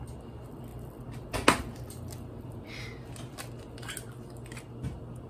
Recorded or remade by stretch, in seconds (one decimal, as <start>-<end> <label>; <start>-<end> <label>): 0.0-5.3 recorded